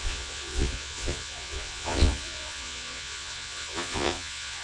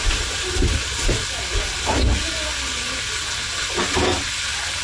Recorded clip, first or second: second